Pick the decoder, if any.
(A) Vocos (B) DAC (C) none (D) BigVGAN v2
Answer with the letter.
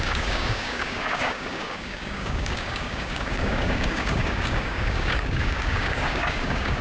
B